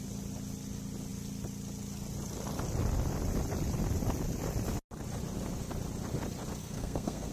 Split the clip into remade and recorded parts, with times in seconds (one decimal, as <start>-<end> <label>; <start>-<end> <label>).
0.0-6.6 recorded; 6.6-7.3 remade